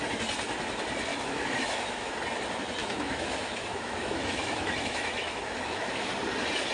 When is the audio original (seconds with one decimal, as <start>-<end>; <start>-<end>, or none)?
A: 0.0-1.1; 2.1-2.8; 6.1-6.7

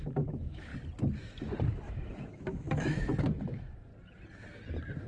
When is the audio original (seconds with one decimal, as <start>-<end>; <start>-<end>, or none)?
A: 0.7-1.7; 3.9-5.1

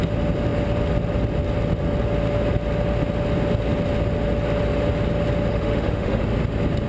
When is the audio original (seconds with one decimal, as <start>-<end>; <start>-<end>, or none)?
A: 0.0-5.5; 6.2-6.9